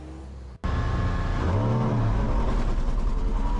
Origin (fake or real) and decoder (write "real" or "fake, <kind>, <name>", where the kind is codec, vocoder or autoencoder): real